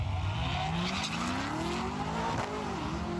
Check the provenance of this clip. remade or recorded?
recorded